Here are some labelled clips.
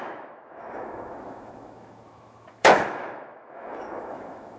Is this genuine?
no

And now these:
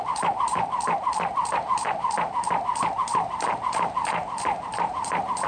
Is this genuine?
yes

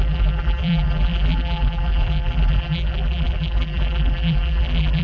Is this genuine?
no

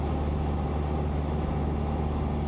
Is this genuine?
yes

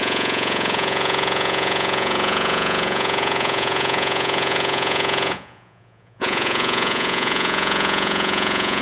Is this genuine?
no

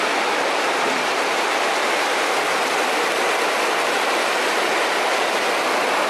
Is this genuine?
yes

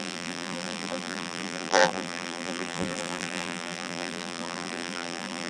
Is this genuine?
no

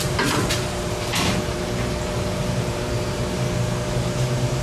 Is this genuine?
no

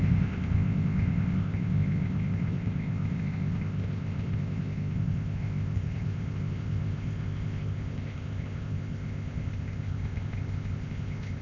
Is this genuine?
no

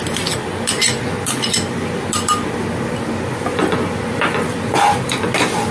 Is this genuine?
yes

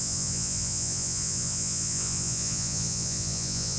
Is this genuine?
no